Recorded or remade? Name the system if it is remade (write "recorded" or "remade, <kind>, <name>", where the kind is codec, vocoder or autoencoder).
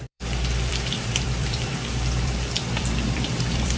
remade, vocoder, BigVGAN v2